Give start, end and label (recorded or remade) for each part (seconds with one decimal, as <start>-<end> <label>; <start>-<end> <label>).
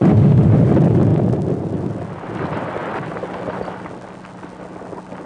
0.0-0.7 remade; 0.7-5.3 recorded